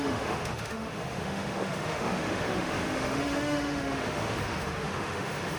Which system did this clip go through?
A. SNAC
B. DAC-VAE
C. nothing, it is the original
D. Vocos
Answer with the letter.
B